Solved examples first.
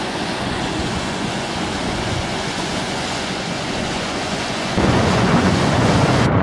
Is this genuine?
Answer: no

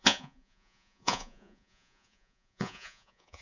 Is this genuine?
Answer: no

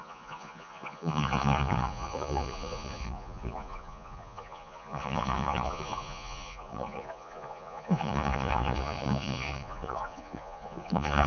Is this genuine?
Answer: no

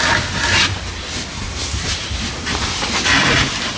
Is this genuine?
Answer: yes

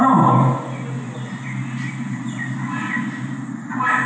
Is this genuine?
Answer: yes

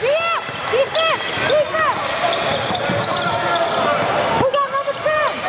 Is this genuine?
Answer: yes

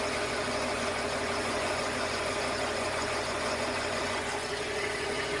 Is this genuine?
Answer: no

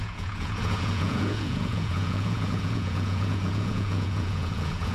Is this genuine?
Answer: no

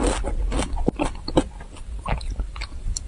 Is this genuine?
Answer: yes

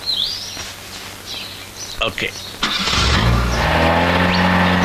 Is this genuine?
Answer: yes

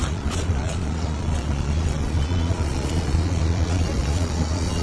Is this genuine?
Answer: no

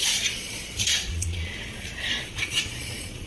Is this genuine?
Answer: no